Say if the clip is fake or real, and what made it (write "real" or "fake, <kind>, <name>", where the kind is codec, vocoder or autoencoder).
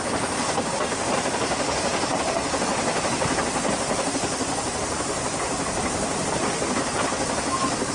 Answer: real